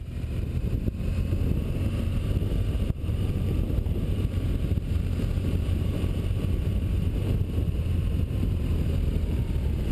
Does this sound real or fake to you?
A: fake